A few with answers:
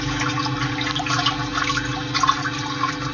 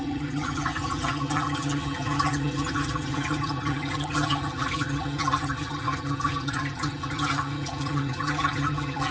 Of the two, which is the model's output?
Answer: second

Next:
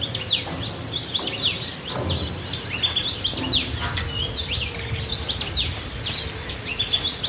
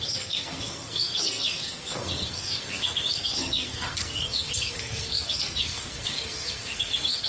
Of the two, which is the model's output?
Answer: second